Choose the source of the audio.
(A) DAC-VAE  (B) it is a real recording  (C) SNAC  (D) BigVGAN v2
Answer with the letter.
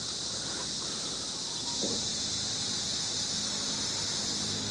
B